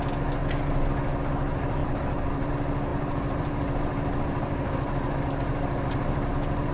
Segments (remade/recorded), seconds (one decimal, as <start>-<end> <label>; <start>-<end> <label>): 0.0-1.8 recorded; 1.8-2.5 remade; 2.5-2.9 recorded; 2.9-6.3 remade; 6.3-6.7 recorded